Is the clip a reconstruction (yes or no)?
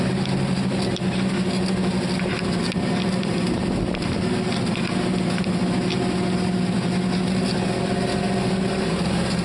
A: no